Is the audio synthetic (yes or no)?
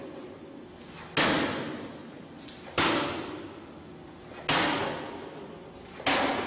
no